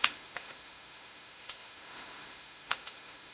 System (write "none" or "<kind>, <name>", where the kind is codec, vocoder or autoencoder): autoencoder, DAC-VAE